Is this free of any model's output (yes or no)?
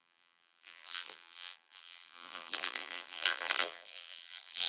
no